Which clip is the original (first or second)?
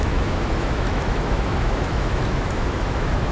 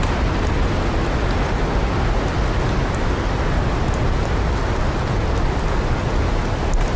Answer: second